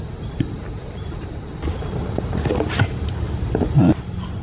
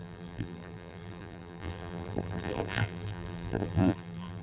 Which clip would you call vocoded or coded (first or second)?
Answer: second